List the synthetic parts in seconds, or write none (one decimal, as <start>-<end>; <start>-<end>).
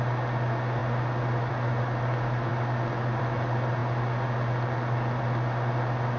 none